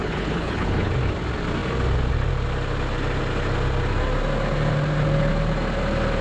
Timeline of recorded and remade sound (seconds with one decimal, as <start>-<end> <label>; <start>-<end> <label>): 0.0-0.9 remade; 0.9-6.2 recorded